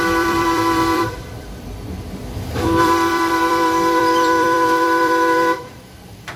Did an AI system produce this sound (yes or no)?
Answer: yes